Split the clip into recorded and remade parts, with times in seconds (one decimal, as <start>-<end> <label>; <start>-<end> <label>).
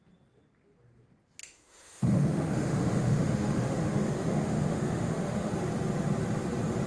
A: 0.0-1.4 recorded; 1.4-5.5 remade; 5.5-6.9 recorded